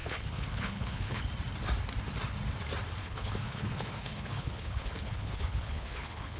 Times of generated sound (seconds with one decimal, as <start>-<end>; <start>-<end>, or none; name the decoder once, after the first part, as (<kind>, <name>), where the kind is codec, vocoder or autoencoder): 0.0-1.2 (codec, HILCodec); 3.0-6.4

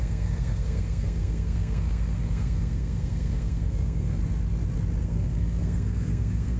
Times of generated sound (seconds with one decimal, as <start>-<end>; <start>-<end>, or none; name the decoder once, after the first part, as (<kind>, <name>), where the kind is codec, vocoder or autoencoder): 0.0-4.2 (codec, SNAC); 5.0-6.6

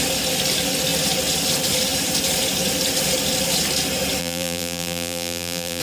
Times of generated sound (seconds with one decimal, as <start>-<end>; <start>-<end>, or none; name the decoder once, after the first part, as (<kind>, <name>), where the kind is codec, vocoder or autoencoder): 4.2-5.8 (vocoder, BigVGAN v2)

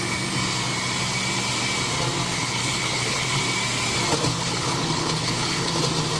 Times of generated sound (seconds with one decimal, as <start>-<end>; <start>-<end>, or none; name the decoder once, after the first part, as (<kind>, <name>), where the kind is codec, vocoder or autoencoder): 2.3-3.4 (codec, HILCodec); 4.3-5.8